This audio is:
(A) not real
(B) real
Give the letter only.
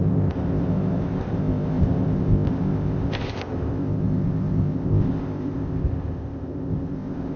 A